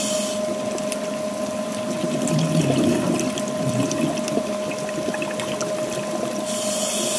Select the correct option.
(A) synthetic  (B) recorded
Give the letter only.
B